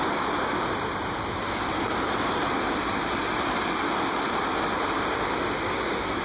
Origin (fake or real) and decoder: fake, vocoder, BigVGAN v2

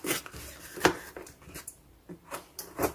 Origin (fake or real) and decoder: real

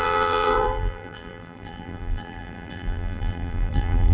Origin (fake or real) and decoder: fake, vocoder, BigVGAN v2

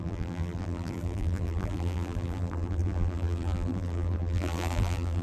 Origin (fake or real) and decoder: fake, vocoder, BigVGAN v2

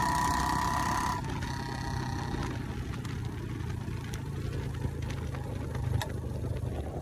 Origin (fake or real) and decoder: real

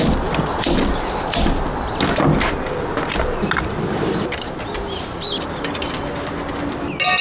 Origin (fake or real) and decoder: real